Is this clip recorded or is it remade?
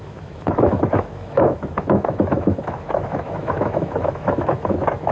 remade